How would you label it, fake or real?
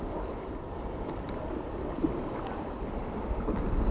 real